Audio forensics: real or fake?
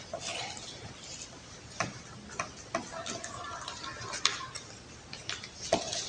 real